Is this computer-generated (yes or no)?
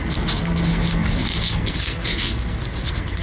yes